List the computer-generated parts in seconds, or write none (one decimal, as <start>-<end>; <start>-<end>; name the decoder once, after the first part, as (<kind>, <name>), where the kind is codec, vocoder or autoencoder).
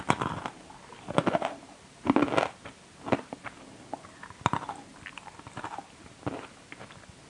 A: 4.9-5.6 (vocoder, BigVGAN v2)